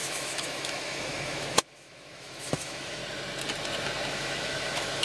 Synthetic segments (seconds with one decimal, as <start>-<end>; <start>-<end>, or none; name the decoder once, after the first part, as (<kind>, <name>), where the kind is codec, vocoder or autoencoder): 0.0-3.0 (autoencoder, DAC-VAE); 4.1-5.0